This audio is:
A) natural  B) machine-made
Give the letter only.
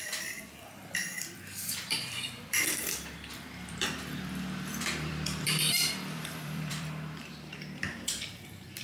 B